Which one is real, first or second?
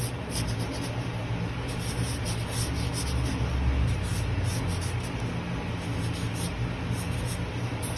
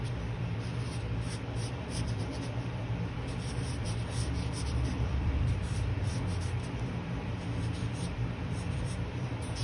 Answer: first